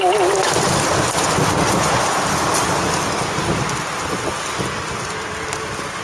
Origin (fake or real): real